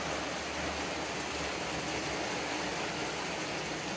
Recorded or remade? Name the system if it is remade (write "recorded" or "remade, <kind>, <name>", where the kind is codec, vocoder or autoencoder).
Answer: recorded